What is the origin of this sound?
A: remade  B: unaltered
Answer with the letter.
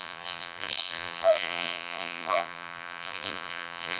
A